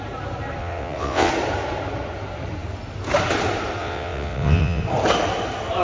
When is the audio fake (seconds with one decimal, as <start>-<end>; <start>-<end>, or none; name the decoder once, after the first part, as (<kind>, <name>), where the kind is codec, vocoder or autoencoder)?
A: 0.6-1.3 (vocoder, WaveNeXt); 3.8-4.8